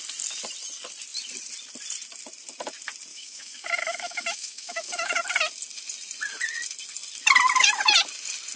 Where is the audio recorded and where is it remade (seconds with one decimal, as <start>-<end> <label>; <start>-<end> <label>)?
0.0-3.1 recorded; 3.1-5.2 remade; 5.2-8.6 recorded